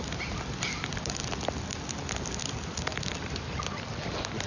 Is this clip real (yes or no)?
no